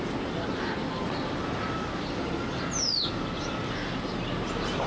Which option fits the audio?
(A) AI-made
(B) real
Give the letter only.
B